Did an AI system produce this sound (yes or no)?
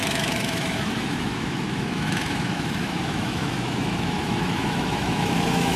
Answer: yes